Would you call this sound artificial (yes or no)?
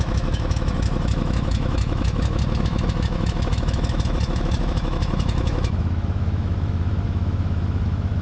yes